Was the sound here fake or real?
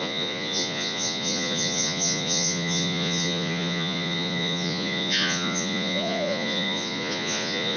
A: fake